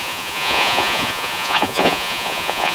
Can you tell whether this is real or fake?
fake